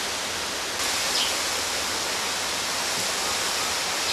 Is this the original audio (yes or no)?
yes